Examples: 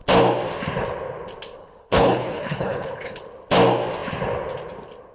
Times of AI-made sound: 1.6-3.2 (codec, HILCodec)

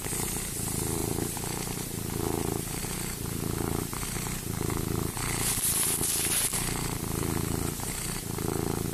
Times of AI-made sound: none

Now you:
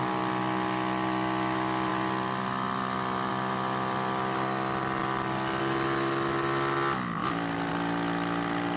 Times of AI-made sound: 1.9-3.3 (vocoder, BigVGAN v2); 5.0-5.6; 7.2-7.7